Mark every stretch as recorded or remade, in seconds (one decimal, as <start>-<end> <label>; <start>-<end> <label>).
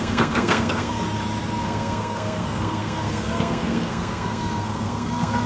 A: 0.0-1.0 remade; 1.0-1.6 recorded; 1.6-5.5 remade